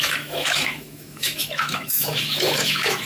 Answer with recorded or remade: remade